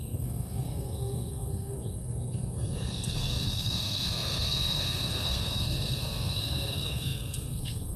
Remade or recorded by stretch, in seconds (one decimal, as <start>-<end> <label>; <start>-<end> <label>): 0.0-8.0 remade